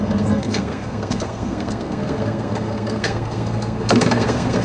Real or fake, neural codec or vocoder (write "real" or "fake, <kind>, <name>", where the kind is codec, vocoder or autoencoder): fake, codec, SNAC